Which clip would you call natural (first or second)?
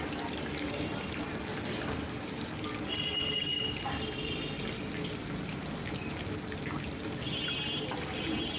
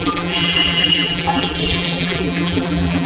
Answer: first